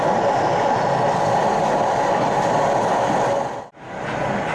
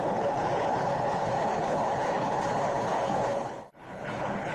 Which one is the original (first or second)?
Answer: first